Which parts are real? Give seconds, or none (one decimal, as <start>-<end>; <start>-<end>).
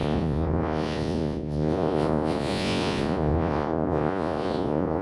none